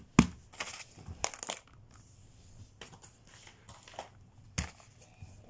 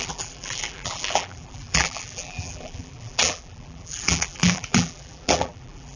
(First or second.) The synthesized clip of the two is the second